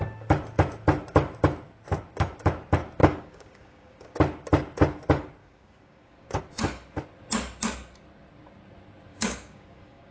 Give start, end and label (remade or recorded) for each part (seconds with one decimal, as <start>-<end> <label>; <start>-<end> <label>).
0.0-3.0 recorded; 3.0-4.2 remade; 4.2-5.4 recorded; 5.4-6.4 remade; 6.4-9.1 recorded; 9.1-10.1 remade